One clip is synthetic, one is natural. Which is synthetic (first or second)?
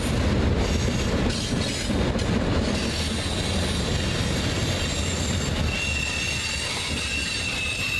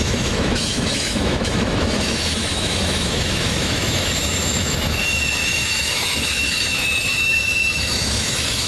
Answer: second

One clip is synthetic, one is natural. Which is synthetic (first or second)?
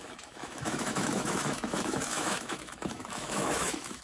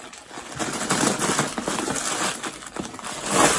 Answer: first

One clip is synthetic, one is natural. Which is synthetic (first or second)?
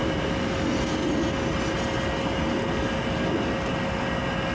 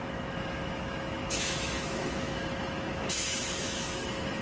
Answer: second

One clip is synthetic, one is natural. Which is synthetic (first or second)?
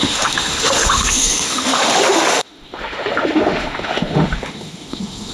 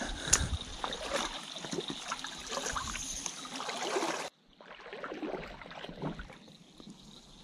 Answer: first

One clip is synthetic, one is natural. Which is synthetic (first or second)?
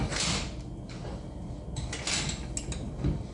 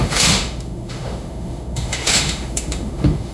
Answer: second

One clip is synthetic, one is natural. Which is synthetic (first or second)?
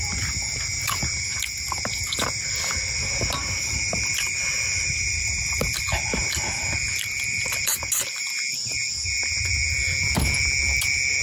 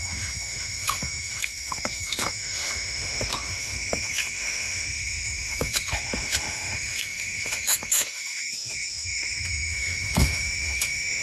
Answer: second